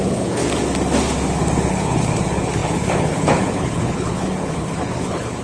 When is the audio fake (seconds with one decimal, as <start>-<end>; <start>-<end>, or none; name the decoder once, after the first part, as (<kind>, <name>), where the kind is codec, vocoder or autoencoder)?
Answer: 0.0-0.4 (codec, HILCodec); 1.7-5.4